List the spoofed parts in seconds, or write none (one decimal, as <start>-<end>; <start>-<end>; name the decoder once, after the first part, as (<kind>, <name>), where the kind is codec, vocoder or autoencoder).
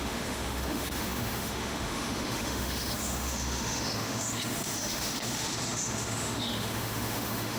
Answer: 0.0-7.6 (autoencoder, DAC-VAE)